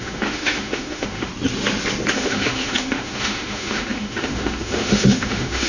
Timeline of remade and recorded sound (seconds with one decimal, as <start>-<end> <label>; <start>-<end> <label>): 0.0-1.3 remade; 1.3-2.1 recorded; 2.1-5.7 remade